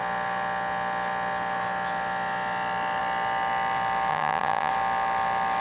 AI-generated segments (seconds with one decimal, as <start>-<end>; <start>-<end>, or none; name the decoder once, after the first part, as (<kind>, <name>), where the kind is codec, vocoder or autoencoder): 4.1-4.7 (vocoder, HiFi-GAN)